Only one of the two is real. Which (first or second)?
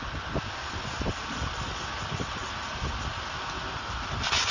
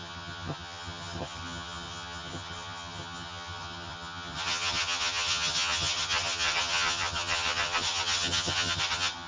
first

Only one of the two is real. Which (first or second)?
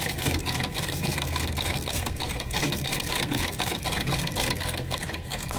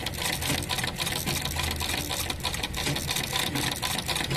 second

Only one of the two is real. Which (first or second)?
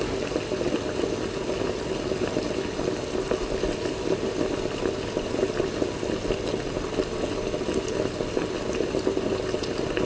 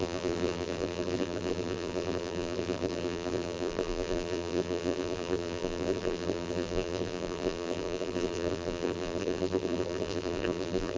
first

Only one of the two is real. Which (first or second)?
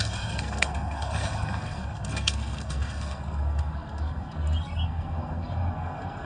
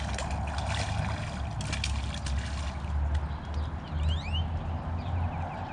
second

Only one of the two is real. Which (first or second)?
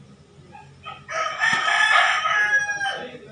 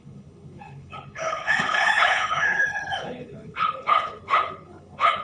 first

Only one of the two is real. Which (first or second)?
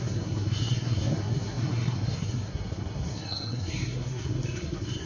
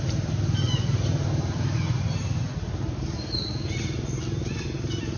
second